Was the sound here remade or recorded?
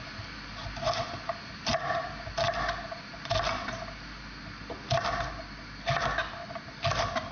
recorded